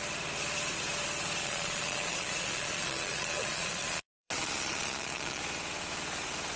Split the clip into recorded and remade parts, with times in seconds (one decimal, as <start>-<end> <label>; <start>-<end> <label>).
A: 0.0-1.4 recorded; 1.4-5.4 remade; 5.4-6.6 recorded